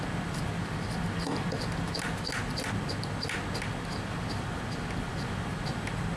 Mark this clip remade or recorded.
recorded